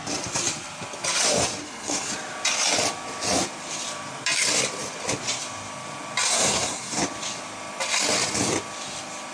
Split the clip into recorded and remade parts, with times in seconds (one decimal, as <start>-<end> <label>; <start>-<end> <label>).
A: 0.0-1.6 recorded; 1.6-2.1 remade; 2.1-6.3 recorded; 6.3-7.0 remade; 7.0-9.3 recorded